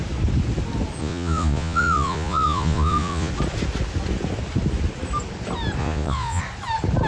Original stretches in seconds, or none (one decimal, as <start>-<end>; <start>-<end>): 0.0-1.0; 3.3-5.8; 6.4-7.1